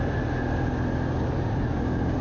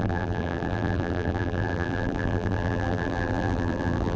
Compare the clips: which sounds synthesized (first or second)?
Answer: second